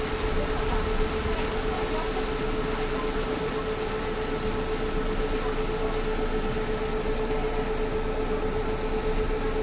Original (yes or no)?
yes